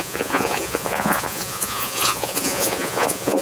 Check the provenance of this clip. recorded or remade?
remade